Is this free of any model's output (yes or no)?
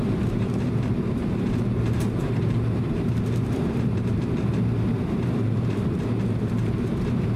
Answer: no